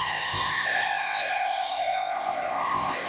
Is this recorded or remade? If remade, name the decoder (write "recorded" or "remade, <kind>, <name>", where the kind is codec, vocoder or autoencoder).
remade, codec, ZipCodec